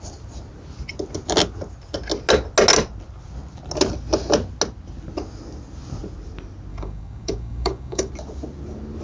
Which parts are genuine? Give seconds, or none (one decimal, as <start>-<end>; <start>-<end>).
0.0-6.7; 8.1-9.0

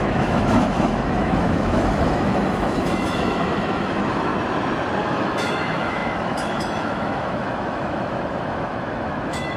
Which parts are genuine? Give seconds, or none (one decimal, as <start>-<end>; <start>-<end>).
4.3-5.0

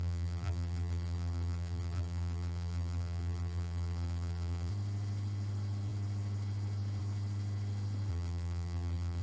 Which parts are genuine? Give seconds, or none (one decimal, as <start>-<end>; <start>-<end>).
4.7-8.1

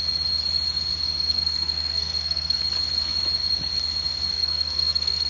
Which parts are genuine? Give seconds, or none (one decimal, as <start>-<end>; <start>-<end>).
0.0-1.3; 2.6-4.3

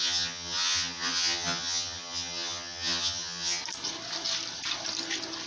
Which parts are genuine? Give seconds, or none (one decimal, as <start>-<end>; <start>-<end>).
3.6-5.5

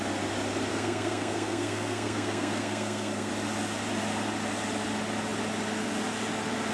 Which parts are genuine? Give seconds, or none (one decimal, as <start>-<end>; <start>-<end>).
0.0-0.7; 3.3-6.7

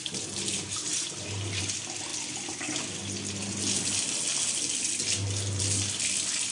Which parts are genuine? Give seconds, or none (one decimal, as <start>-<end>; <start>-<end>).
0.0-0.9; 1.6-6.5